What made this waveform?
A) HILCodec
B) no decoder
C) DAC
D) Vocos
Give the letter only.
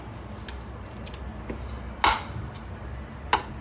B